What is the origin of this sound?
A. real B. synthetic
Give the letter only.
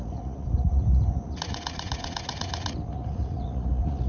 B